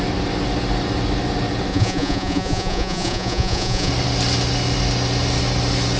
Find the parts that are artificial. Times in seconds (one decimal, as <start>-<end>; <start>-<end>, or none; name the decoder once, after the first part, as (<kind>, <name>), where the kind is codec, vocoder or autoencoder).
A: 1.7-3.9 (vocoder, Vocos)